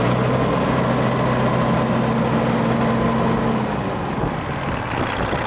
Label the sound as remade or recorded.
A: recorded